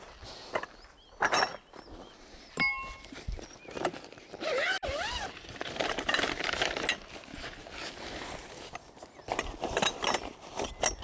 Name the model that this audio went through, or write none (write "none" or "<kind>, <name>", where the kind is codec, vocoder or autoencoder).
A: none